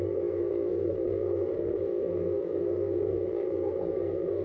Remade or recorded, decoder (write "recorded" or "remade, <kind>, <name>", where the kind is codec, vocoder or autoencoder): remade, codec, SNAC